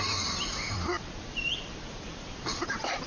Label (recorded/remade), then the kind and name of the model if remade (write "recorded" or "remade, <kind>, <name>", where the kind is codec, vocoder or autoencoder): remade, vocoder, BigVGAN v2